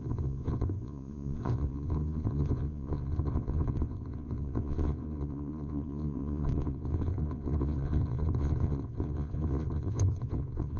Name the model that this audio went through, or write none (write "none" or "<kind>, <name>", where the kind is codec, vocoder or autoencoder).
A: vocoder, Vocos